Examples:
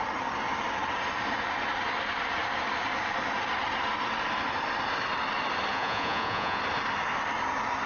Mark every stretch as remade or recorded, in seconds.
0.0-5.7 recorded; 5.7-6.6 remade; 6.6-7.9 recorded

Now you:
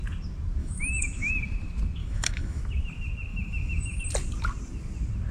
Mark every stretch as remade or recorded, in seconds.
0.0-0.6 recorded; 0.6-1.3 remade; 1.3-2.0 recorded; 2.0-2.6 remade; 2.6-3.3 recorded; 3.3-4.0 remade; 4.0-5.3 recorded

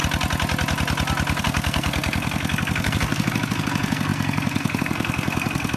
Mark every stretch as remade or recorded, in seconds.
0.0-1.4 recorded; 1.4-5.8 remade